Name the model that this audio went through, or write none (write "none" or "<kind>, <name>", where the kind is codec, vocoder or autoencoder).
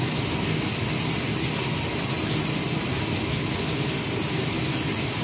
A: none